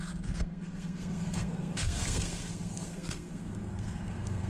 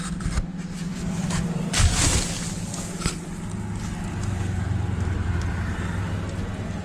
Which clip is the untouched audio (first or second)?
second